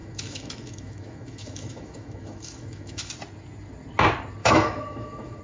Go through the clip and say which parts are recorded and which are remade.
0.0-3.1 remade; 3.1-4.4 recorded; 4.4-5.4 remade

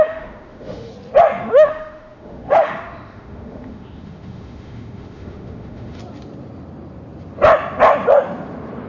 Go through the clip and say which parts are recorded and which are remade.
0.0-0.9 remade; 0.9-1.4 recorded; 1.4-6.0 remade; 6.0-8.9 recorded

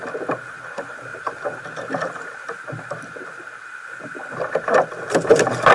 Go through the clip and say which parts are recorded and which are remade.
0.0-5.7 recorded

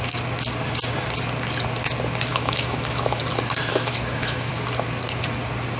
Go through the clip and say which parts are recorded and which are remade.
0.0-2.3 recorded; 2.3-3.2 remade; 3.2-3.7 recorded; 3.7-4.5 remade; 4.5-5.8 recorded

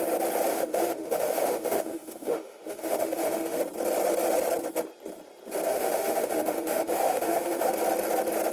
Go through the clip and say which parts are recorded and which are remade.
0.0-0.5 recorded; 0.5-3.6 remade; 3.6-5.7 recorded; 5.7-7.7 remade; 7.7-8.5 recorded

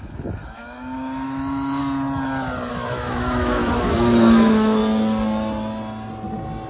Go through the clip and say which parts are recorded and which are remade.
0.0-1.8 remade; 1.8-2.7 recorded; 2.7-4.8 remade; 4.8-6.7 recorded